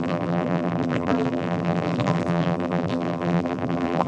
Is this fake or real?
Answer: fake